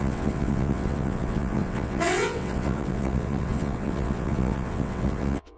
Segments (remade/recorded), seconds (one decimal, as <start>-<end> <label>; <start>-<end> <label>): 0.0-5.6 remade